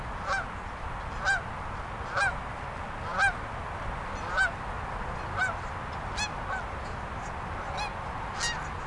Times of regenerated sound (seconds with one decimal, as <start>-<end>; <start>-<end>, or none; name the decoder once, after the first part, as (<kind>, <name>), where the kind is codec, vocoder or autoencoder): none

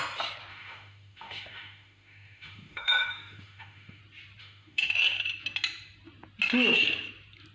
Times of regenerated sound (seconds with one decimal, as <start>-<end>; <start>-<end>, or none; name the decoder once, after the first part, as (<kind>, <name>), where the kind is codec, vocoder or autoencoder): 0.5-4.0 (autoencoder, DAC-VAE); 4.4-4.9